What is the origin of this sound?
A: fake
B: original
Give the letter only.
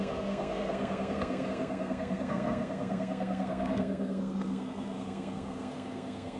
A